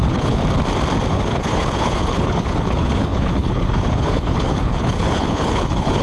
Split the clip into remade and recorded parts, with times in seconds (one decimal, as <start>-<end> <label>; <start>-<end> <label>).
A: 0.0-0.4 remade; 0.4-1.1 recorded; 1.1-6.0 remade